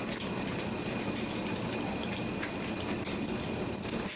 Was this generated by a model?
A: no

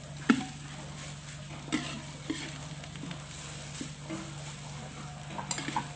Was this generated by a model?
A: no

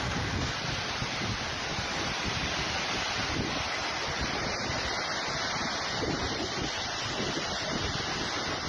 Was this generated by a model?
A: no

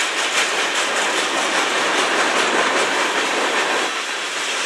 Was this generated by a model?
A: no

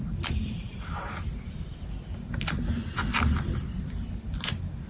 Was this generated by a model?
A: no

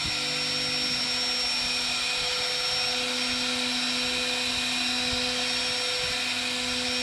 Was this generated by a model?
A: no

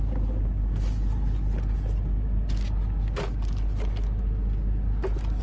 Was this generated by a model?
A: no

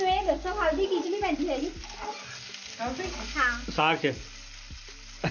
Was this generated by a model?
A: no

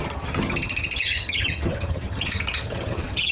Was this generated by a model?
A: yes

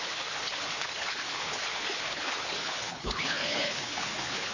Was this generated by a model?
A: yes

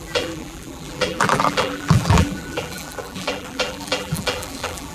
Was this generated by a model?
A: yes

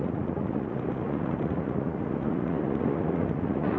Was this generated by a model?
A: yes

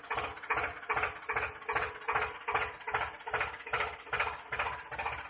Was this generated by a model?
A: no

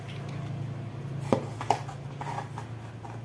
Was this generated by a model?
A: no